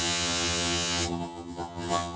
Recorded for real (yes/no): no